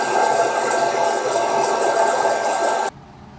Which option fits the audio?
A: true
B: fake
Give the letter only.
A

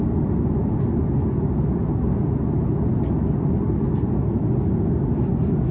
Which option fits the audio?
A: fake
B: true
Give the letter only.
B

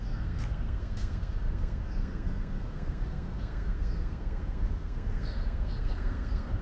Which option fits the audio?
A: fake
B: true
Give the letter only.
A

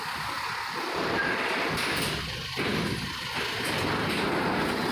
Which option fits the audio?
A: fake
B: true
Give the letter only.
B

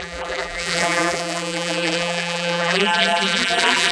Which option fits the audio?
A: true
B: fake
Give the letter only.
B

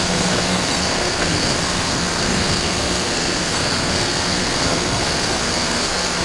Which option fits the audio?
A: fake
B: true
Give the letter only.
A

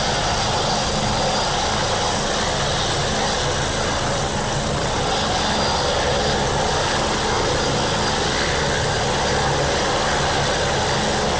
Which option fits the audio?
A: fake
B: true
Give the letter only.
B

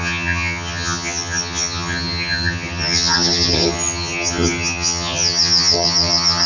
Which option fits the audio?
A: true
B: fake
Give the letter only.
B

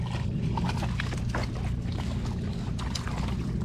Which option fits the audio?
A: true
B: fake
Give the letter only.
A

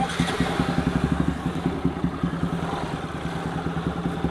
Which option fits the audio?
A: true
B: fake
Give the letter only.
A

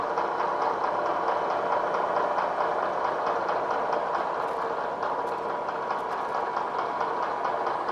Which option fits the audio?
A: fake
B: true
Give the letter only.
B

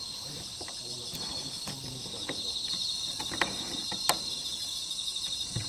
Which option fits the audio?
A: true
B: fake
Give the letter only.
B